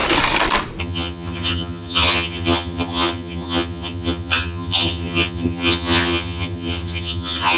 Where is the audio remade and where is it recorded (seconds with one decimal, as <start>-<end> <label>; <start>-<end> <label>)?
0.0-0.8 recorded; 0.8-7.6 remade

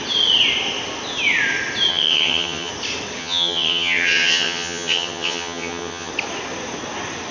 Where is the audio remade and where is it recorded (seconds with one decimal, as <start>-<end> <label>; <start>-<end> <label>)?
0.0-1.9 recorded; 1.9-2.7 remade; 2.7-3.2 recorded; 3.2-6.1 remade; 6.1-7.3 recorded

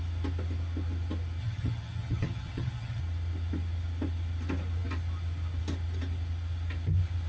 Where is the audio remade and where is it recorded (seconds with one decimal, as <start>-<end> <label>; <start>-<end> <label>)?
0.0-1.4 recorded; 1.4-3.0 remade; 3.0-7.3 recorded